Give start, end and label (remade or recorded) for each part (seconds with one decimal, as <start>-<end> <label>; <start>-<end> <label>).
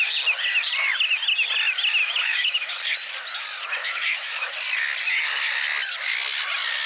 0.0-2.0 recorded; 2.0-2.7 remade; 2.7-3.8 recorded; 3.8-4.5 remade; 4.5-6.9 recorded